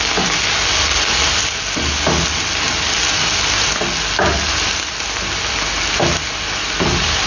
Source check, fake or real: real